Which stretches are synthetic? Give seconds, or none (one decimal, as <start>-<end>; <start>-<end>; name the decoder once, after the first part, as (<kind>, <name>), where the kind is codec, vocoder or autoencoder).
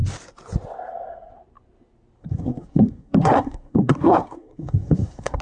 2.2-5.4 (codec, SNAC)